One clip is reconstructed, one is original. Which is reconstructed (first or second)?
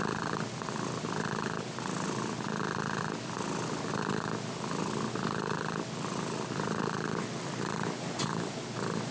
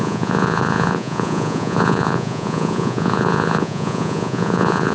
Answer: second